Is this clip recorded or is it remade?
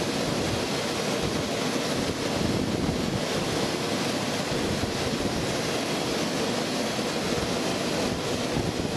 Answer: recorded